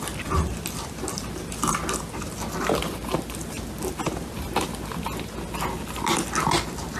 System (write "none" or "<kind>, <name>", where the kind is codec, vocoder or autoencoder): none